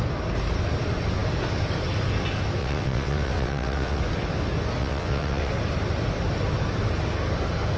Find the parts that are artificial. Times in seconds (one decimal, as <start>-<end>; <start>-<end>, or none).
2.6-4.0; 4.8-5.5